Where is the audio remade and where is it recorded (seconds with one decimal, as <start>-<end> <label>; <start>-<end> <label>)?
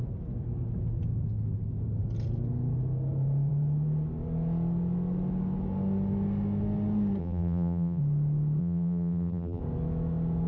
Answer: 0.0-7.2 recorded; 7.2-8.0 remade; 8.0-8.6 recorded; 8.6-9.6 remade; 9.6-10.5 recorded